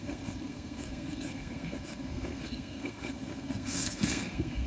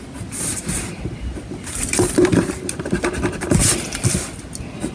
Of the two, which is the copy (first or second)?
first